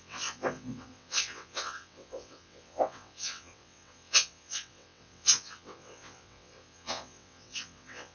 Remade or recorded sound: remade